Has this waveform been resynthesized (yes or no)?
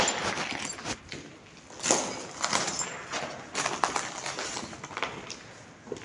no